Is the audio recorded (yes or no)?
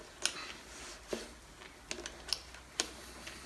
yes